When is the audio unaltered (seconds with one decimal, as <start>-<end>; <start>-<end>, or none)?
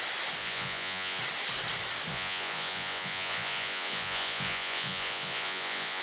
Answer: 0.0-0.4; 1.2-2.1